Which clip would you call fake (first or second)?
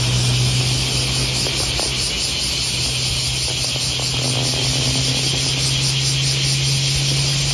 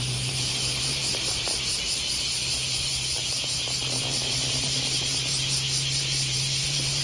second